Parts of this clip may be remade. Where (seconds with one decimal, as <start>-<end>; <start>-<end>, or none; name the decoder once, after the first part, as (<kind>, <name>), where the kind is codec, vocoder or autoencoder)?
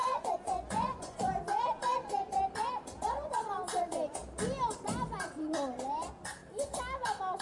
0.0-1.3 (vocoder, Vocos)